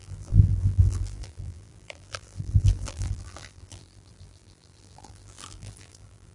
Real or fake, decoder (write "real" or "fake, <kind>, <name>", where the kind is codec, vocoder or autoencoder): fake, vocoder, BigVGAN v2